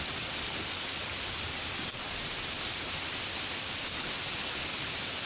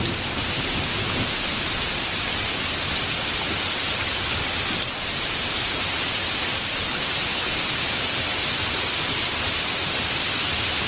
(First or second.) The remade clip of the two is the second